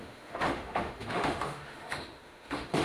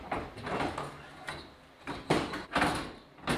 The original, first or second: second